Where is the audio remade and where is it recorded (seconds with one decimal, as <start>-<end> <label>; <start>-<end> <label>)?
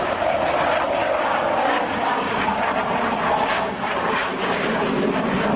0.0-1.0 recorded; 1.0-2.8 remade; 2.8-3.5 recorded; 3.5-4.8 remade; 4.8-5.6 recorded